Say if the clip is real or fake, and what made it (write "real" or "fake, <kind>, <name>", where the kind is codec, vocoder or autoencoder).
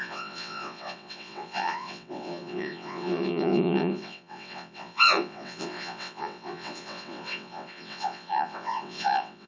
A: fake, vocoder, WaveNeXt